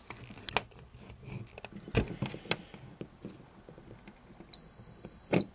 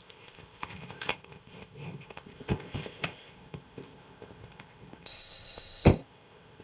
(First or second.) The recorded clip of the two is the first